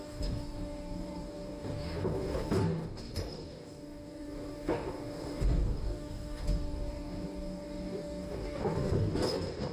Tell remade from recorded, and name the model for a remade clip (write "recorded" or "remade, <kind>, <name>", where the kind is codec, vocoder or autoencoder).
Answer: remade, codec, DAC